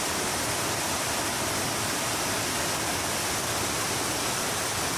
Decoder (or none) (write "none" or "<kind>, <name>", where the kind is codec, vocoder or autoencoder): none